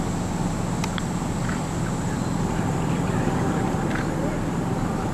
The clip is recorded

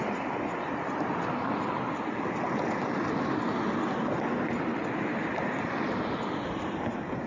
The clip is recorded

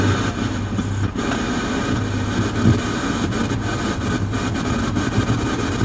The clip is recorded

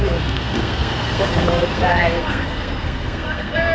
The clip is remade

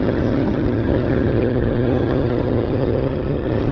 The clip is remade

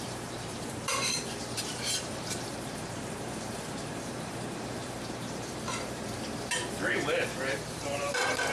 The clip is remade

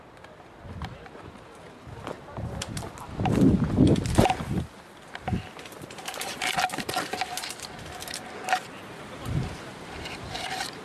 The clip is recorded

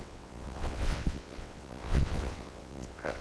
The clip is remade